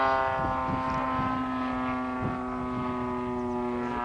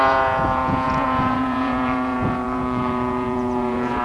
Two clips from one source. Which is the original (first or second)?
first